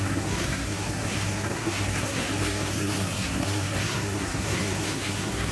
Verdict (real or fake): fake